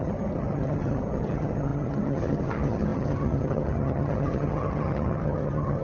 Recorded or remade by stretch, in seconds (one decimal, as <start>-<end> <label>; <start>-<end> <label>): 0.0-5.8 remade